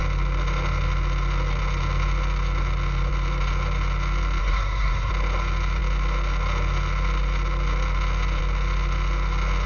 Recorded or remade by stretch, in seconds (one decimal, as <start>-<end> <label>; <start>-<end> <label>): 0.0-4.4 recorded; 4.4-5.1 remade; 5.1-9.7 recorded